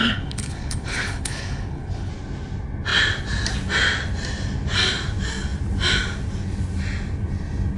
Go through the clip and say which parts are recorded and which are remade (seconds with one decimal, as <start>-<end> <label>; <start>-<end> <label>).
0.0-2.1 remade; 2.1-7.8 recorded